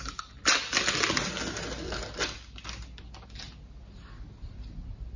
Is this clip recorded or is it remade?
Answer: recorded